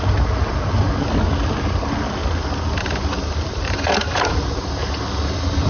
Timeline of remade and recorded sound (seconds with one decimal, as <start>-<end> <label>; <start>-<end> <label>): 0.0-2.2 recorded; 2.2-4.8 remade; 4.8-5.7 recorded